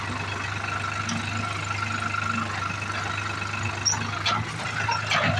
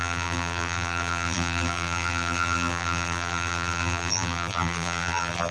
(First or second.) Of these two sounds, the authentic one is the first